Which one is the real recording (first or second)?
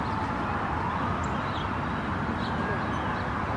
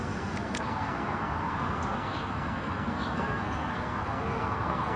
first